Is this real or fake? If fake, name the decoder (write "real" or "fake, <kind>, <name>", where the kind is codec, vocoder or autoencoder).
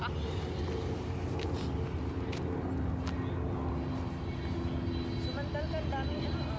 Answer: real